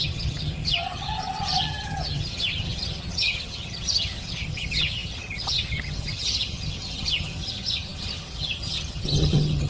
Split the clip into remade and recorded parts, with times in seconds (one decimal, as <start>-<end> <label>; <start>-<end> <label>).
0.0-9.7 remade